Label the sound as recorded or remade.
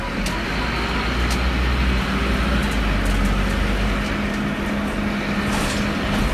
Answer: recorded